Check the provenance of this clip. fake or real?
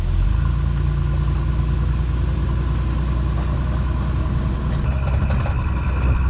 real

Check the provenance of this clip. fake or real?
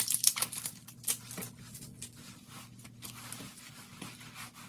real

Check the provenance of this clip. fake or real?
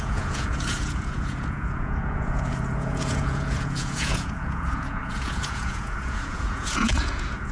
fake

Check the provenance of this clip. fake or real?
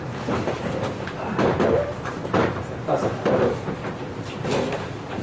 fake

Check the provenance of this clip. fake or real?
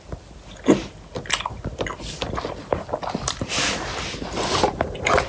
real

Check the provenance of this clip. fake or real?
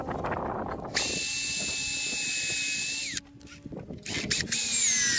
real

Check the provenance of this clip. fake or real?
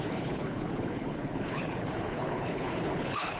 fake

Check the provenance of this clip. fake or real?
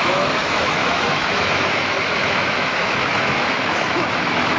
fake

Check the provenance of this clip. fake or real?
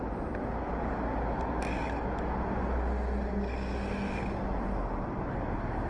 real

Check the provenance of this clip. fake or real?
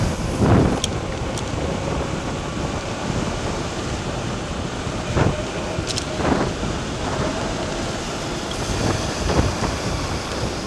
fake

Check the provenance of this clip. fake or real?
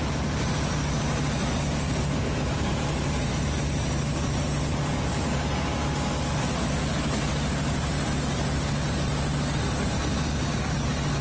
real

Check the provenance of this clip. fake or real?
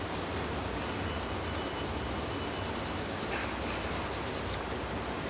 real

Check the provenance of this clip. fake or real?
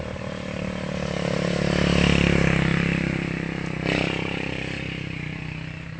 real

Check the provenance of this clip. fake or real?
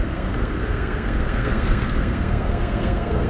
fake